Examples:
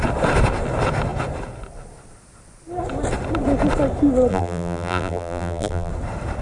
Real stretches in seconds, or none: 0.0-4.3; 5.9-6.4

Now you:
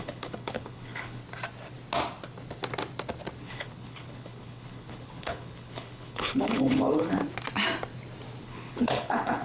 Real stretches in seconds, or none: 1.2-3.4; 7.2-8.4

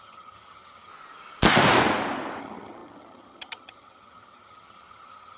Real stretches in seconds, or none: 0.9-2.4

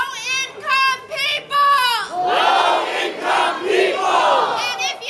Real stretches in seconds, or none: 0.0-5.1